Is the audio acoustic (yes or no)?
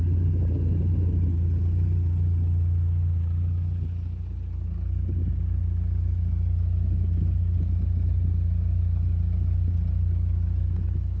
yes